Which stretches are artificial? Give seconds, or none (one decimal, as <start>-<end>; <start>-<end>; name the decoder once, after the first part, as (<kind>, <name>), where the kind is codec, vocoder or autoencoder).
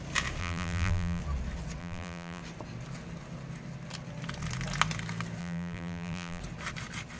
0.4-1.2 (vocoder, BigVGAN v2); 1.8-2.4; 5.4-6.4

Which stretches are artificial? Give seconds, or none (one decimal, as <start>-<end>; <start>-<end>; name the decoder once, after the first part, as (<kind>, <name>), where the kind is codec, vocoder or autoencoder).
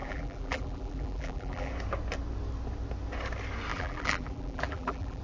0.0-1.7 (vocoder, BigVGAN v2); 3.7-5.2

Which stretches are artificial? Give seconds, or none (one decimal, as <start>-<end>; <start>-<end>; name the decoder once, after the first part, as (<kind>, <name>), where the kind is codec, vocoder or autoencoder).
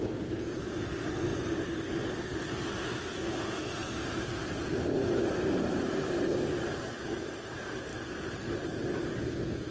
1.3-1.9 (vocoder, BigVGAN v2); 3.8-6.8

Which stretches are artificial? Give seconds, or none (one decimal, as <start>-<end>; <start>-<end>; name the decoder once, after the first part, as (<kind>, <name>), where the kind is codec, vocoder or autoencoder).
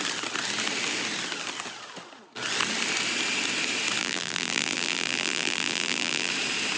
4.0-6.3 (vocoder, BigVGAN v2)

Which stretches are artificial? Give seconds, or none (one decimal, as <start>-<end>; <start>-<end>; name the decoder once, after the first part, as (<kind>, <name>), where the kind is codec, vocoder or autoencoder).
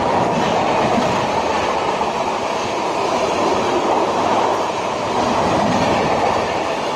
0.7-2.4 (vocoder, BigVGAN v2); 4.5-7.0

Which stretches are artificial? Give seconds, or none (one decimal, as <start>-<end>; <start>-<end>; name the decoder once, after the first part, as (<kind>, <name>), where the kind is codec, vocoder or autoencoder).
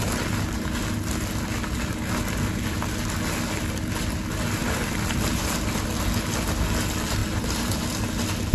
4.6-5.4 (vocoder, BigVGAN v2); 7.2-8.1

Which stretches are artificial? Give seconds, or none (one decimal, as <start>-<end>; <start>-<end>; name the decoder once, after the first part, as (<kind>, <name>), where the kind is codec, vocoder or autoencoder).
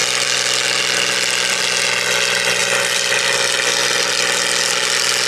2.6-3.2 (vocoder, BigVGAN v2)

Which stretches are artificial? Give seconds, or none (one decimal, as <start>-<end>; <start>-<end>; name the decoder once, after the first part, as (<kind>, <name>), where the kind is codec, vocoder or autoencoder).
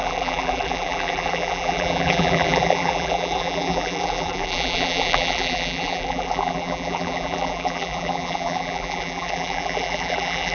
0.0-10.5 (vocoder, BigVGAN v2)